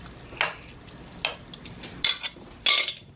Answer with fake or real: real